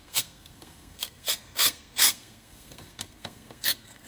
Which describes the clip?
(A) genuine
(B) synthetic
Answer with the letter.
B